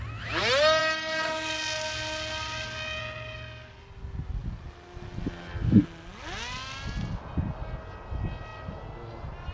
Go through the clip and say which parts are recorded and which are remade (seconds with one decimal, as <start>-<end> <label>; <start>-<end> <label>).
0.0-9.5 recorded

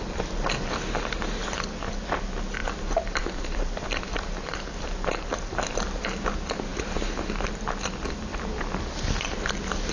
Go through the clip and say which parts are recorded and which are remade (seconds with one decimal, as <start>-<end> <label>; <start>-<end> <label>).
0.0-2.6 recorded; 2.6-6.2 remade; 6.2-8.3 recorded; 8.3-8.8 remade; 8.8-9.9 recorded

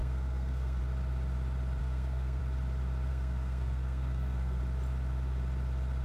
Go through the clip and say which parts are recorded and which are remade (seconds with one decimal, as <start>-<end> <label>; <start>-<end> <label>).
0.0-0.8 remade; 0.8-1.8 recorded; 1.8-2.4 remade; 2.4-3.1 recorded; 3.1-4.6 remade; 4.6-6.0 recorded

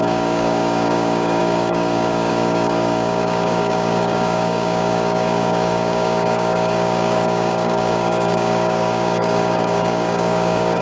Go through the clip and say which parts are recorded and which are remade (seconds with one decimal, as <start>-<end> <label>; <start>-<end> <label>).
0.0-10.8 remade